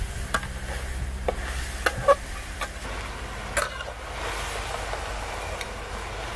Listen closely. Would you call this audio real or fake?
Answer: real